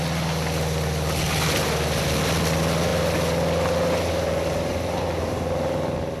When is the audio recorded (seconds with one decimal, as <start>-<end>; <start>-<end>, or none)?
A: 0.0-6.2